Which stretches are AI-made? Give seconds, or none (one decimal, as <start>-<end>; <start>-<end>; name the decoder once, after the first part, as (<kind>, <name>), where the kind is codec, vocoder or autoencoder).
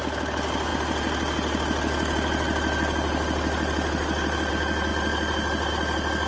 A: none